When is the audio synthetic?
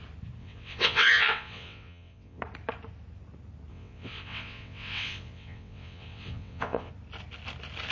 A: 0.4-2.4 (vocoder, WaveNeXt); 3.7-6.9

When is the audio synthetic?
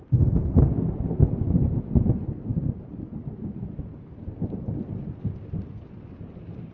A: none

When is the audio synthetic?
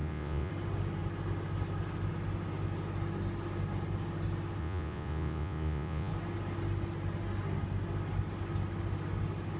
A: 0.0-0.5 (vocoder, Vocos); 4.6-6.1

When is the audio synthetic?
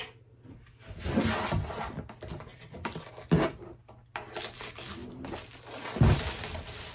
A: 2.5-3.0 (vocoder, BigVGAN v2)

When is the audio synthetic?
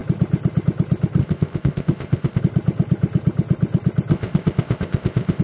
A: 1.2-2.4 (codec, ZipCodec); 4.1-5.4